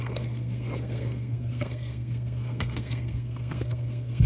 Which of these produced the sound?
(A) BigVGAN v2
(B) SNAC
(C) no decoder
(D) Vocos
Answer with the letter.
B